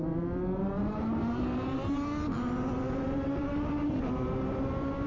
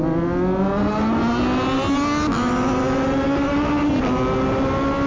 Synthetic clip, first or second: first